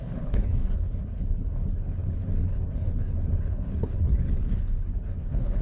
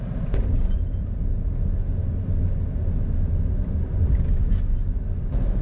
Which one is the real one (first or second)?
second